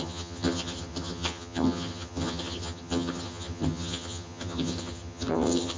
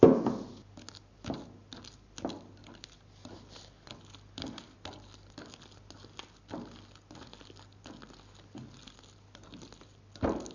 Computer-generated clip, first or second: first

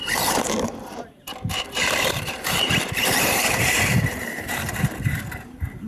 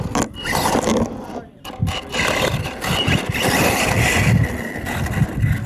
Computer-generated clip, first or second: first